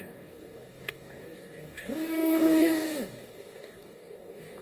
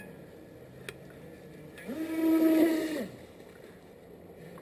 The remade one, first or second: first